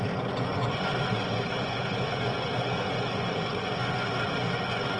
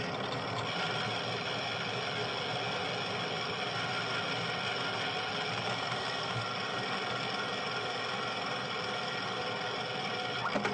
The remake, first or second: first